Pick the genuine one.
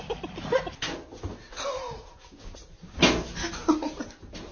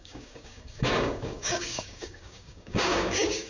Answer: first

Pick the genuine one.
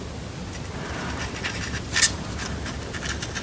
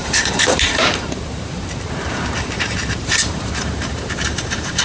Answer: first